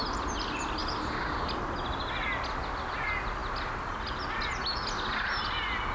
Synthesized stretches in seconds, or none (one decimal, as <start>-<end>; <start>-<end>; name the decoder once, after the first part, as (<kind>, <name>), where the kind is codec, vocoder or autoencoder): none